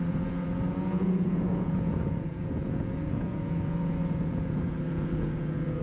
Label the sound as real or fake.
fake